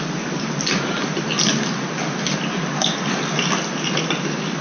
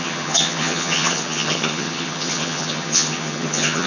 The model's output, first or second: second